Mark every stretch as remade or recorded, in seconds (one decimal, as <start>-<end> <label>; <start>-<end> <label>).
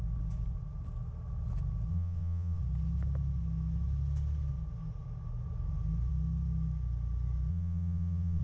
0.0-1.9 recorded; 1.9-2.6 remade; 2.6-7.5 recorded; 7.5-8.4 remade